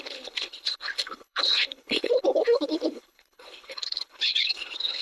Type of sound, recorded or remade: remade